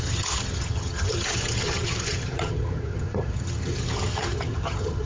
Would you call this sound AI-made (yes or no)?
yes